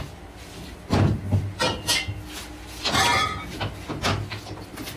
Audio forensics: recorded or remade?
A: recorded